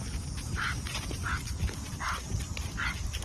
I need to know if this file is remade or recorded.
recorded